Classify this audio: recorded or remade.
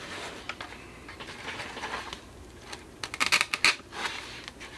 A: recorded